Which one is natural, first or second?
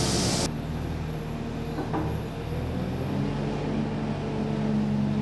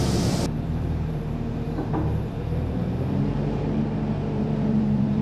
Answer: first